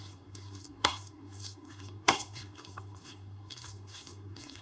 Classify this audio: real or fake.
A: fake